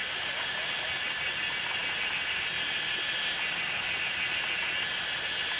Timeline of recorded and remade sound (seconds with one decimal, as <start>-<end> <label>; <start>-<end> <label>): 0.0-5.6 recorded